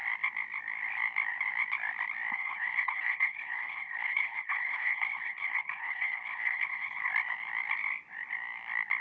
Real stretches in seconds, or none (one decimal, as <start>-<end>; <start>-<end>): 0.0-2.3; 7.1-9.0